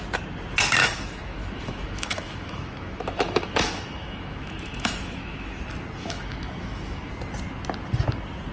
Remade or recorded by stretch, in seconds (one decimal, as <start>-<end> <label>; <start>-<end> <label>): 0.0-0.8 recorded; 0.8-5.6 remade; 5.6-6.0 recorded; 6.0-7.1 remade; 7.1-8.5 recorded